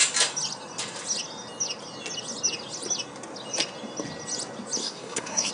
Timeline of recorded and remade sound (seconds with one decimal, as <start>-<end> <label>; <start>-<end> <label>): 0.0-4.8 recorded; 4.8-5.5 remade